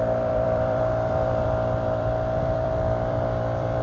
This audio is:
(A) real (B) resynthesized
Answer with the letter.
B